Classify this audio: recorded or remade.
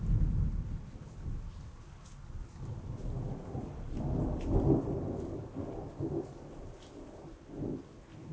recorded